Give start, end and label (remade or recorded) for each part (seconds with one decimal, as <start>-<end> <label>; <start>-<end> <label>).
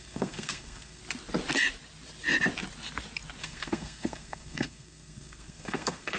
0.0-1.0 remade; 1.0-3.4 recorded; 3.4-6.2 remade